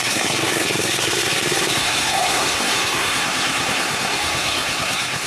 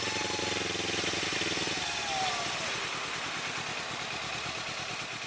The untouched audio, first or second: second